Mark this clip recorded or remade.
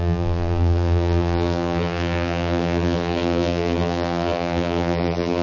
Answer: remade